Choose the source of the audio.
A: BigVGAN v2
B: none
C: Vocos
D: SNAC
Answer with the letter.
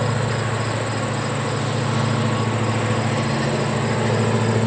B